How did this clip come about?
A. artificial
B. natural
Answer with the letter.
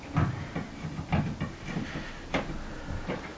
B